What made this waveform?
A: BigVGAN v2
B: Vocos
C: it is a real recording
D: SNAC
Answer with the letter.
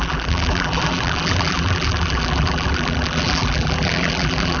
A